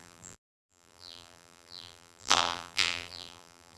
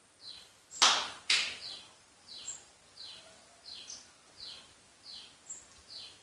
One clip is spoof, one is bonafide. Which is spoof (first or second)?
first